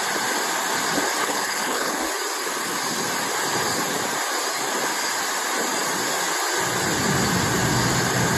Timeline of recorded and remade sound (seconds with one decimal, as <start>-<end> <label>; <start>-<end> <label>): 0.0-1.2 recorded; 1.2-2.0 remade; 2.0-8.4 recorded